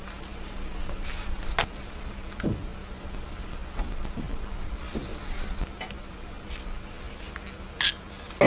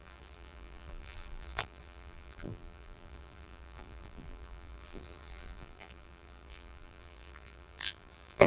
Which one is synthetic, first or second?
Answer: second